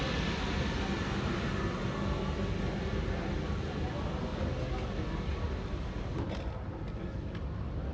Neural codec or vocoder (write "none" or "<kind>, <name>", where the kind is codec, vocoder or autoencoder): none